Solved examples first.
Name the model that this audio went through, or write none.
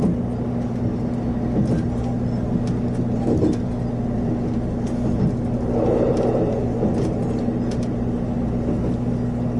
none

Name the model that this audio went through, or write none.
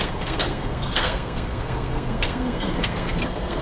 codec, SNAC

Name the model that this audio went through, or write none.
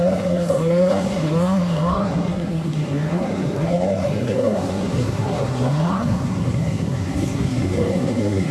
codec, SNAC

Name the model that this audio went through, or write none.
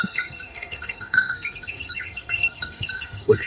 codec, SNAC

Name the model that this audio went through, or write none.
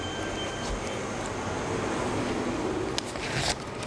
none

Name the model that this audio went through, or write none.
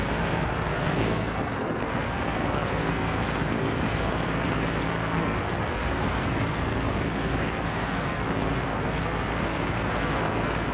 codec, SNAC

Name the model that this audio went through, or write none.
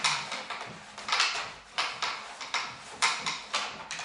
none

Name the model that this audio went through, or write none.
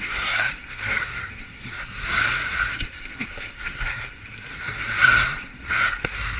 codec, SNAC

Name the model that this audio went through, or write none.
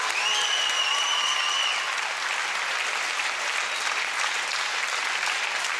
none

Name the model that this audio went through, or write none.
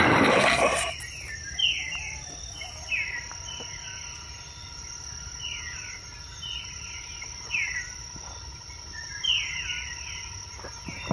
none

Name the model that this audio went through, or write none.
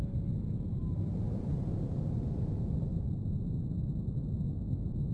none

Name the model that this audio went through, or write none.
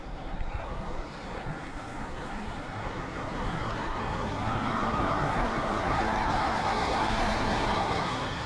codec, SNAC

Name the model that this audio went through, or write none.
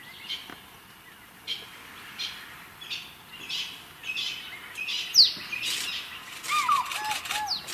none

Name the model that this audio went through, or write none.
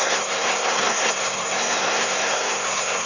codec, SNAC